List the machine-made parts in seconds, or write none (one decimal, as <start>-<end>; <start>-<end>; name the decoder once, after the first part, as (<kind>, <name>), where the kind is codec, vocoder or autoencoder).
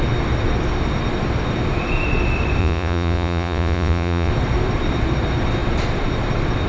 2.6-4.3 (vocoder, Vocos)